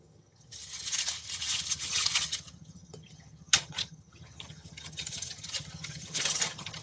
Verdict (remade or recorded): remade